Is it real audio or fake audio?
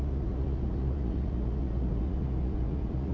fake